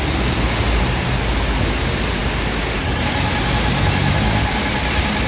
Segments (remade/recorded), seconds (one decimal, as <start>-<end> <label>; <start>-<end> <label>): 0.0-5.3 recorded